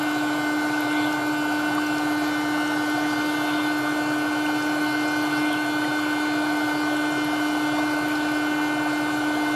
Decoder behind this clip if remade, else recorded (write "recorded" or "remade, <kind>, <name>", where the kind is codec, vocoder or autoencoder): recorded